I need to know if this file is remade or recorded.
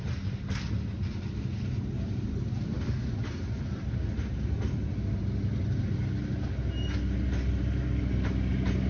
recorded